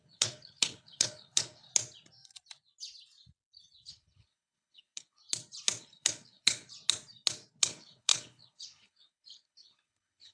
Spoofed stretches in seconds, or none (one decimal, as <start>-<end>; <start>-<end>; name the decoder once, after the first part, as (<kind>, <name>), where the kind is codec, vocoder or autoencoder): 0.0-1.7 (codec, HILCodec); 3.9-5.2; 5.8-6.7; 7.6-10.3